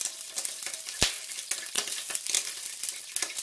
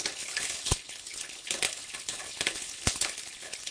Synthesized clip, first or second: second